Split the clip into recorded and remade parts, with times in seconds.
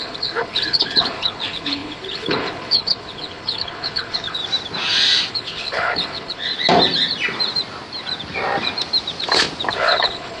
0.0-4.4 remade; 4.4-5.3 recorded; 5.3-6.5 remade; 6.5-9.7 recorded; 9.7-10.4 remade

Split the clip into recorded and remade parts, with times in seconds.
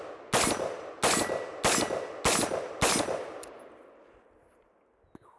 0.0-5.4 recorded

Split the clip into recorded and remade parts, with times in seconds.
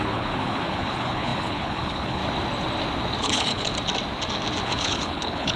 0.0-2.2 remade; 2.2-3.2 recorded; 3.2-3.7 remade; 3.7-4.6 recorded; 4.6-5.6 remade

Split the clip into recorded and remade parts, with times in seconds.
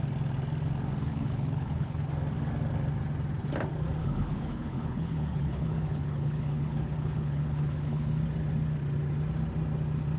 0.0-1.0 recorded; 1.0-2.1 remade; 2.1-4.0 recorded; 4.0-8.2 remade; 8.2-10.2 recorded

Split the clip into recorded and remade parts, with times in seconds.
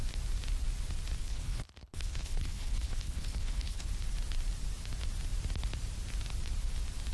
0.0-1.2 recorded; 1.2-3.9 remade; 3.9-7.1 recorded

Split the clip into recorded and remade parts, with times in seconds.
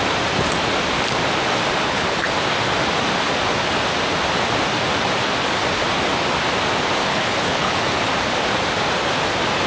0.0-1.8 recorded; 1.8-2.3 remade; 2.3-7.0 recorded; 7.0-8.1 remade; 8.1-9.7 recorded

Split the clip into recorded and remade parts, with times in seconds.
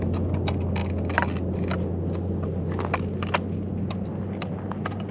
0.0-5.1 recorded